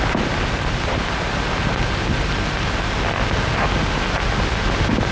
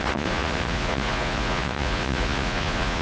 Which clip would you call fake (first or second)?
second